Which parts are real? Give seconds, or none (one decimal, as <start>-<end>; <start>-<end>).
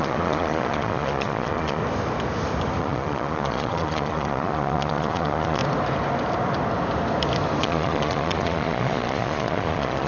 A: 1.8-2.8; 5.6-7.6